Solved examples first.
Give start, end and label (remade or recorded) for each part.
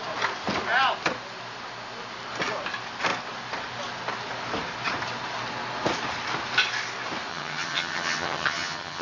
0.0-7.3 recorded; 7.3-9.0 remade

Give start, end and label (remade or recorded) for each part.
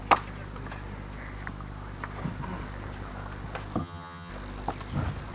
0.0-3.8 recorded; 3.8-4.3 remade; 4.3-5.3 recorded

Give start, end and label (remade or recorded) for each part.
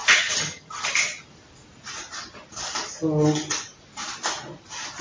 0.0-0.9 remade; 0.9-5.0 recorded